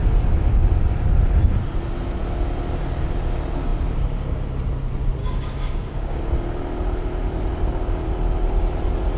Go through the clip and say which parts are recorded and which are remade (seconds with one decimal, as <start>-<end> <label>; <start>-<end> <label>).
0.0-5.2 recorded; 5.2-6.2 remade; 6.2-9.2 recorded